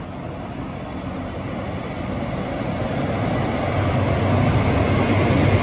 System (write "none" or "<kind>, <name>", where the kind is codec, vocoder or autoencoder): none